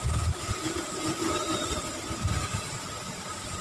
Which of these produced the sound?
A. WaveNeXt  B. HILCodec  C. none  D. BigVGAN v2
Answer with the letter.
D